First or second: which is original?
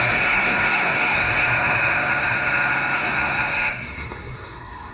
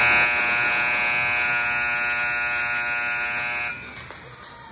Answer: second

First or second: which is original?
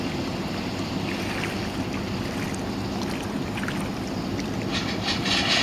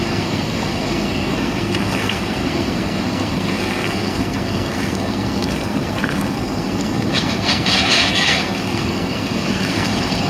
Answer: first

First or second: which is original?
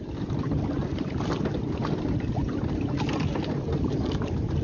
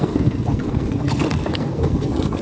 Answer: first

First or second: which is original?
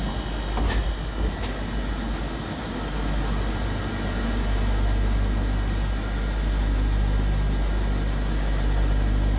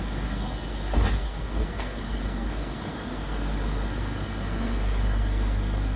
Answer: first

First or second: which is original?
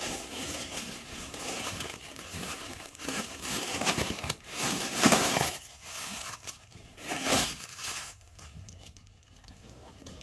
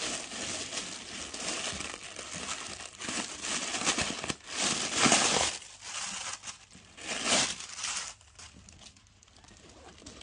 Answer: second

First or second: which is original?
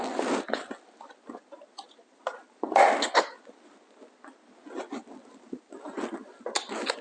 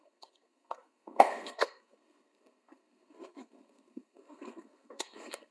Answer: first